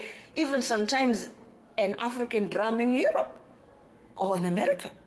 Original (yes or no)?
no